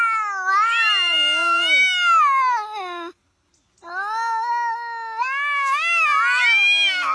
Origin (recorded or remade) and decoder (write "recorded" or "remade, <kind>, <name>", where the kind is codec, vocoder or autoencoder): recorded